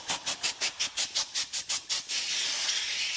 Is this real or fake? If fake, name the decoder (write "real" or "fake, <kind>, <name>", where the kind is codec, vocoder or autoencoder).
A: real